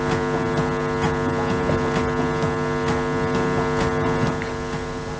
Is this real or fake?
real